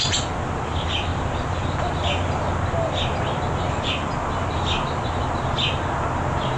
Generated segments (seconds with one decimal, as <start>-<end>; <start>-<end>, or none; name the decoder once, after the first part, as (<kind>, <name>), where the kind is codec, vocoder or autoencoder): none